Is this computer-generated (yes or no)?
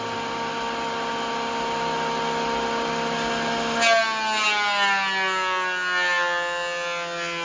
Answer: no